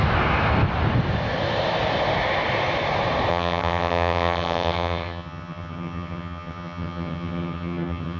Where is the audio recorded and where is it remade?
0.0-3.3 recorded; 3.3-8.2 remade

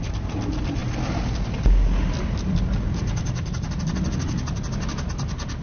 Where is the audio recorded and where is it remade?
0.0-5.6 recorded

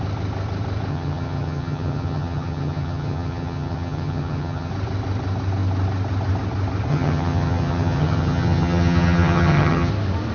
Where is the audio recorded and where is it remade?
0.0-0.9 recorded; 0.9-4.7 remade; 4.7-6.9 recorded; 6.9-9.9 remade; 9.9-10.3 recorded